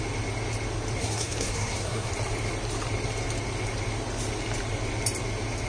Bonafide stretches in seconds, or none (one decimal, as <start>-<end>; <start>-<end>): 0.0-1.0; 2.1-5.7